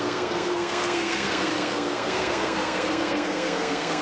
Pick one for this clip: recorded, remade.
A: remade